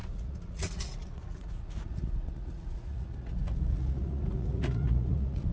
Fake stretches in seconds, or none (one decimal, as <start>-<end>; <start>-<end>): 0.0-5.5